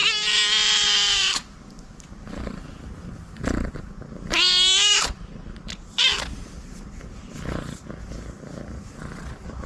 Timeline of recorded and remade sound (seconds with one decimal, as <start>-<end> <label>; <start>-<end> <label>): 0.0-9.7 recorded